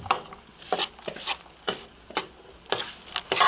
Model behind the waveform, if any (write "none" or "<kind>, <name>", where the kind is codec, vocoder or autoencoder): none